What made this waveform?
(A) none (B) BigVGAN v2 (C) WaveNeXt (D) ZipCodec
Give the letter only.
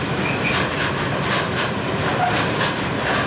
A